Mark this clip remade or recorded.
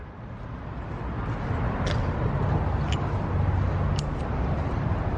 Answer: recorded